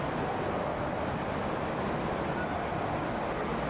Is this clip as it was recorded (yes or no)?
yes